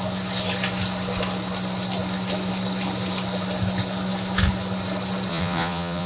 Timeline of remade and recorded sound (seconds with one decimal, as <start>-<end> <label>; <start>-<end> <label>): 0.0-5.3 recorded; 5.3-6.1 remade